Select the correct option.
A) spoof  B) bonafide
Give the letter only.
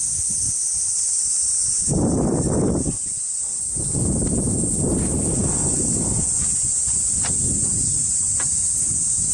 B